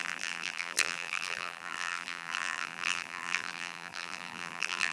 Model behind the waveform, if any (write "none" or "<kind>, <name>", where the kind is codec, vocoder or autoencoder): vocoder, BigVGAN v2